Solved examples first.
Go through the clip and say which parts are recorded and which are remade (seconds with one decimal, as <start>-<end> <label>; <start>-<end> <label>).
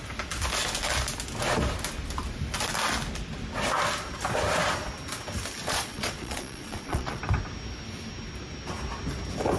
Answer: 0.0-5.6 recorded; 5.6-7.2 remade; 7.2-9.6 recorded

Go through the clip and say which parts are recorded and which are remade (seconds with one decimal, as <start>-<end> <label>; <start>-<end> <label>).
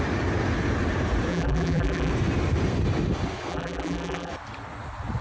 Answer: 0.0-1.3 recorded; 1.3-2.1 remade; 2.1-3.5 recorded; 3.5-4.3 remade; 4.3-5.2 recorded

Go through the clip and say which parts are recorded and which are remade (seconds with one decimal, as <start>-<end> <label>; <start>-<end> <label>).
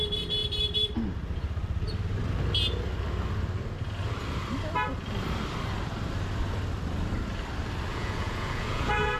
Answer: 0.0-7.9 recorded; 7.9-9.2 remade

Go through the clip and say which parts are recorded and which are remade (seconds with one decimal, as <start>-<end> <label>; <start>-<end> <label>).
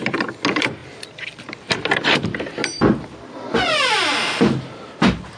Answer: 0.0-5.4 recorded